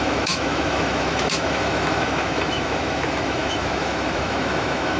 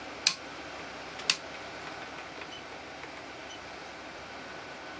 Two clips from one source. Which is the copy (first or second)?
first